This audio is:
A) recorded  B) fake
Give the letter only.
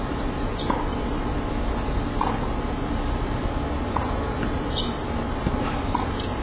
A